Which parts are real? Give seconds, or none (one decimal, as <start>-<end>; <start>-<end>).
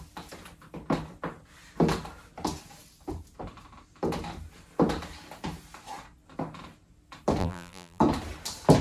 0.0-7.4; 8.0-8.8